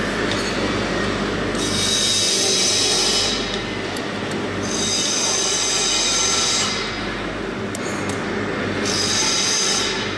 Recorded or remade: recorded